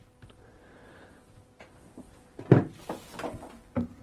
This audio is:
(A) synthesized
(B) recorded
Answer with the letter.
B